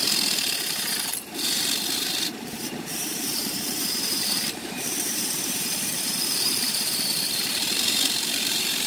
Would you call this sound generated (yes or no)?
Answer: yes